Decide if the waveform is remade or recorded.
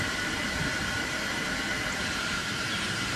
remade